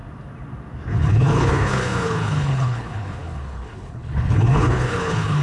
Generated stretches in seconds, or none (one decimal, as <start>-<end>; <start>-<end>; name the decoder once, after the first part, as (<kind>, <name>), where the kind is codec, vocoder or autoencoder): 1.1-5.4 (codec, HILCodec)